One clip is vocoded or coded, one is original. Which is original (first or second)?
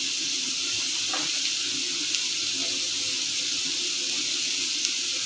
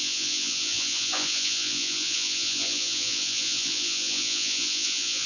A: first